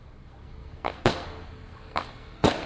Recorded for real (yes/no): no